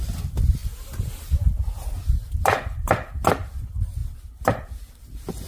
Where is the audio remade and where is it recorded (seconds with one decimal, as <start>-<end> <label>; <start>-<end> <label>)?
0.0-4.0 recorded; 4.0-5.5 remade